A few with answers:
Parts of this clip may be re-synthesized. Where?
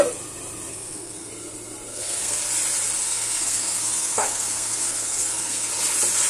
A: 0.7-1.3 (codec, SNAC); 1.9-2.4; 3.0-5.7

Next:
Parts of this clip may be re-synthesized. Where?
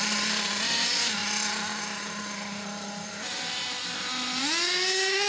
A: none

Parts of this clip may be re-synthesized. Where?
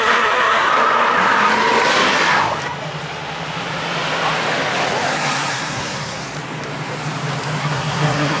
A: 0.0-0.7 (codec, SNAC); 5.1-6.2; 7.6-8.4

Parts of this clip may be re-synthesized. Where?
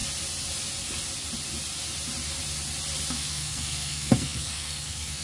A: 3.1-5.2 (codec, SNAC)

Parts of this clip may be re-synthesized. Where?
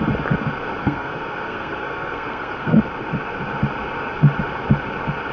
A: 0.8-2.8 (codec, SNAC)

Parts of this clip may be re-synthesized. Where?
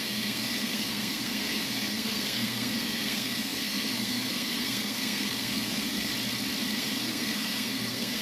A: 0.0-6.1 (codec, SNAC); 6.7-8.2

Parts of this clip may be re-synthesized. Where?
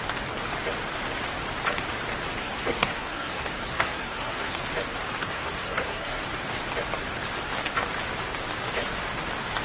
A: 2.4-4.6 (codec, SNAC); 5.2-6.2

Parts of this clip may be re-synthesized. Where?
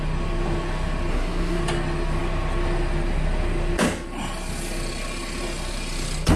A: 1.1-1.6 (codec, SNAC)